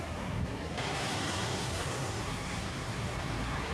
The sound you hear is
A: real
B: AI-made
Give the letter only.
B